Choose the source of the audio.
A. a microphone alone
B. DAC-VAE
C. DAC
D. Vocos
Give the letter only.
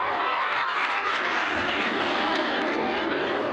C